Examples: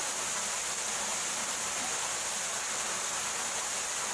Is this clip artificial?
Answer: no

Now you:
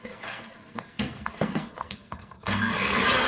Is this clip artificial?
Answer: yes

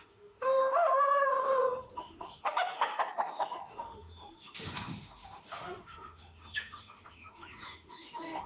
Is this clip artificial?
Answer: yes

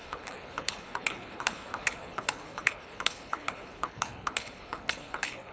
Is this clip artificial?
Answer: yes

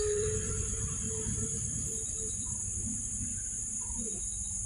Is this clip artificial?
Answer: yes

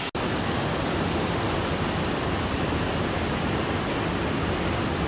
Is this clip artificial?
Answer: no